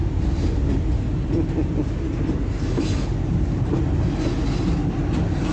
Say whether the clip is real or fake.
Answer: real